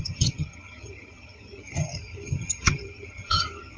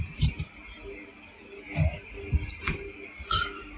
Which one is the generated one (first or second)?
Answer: first